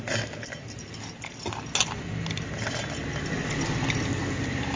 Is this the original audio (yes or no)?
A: yes